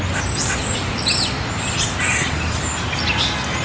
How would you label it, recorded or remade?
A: recorded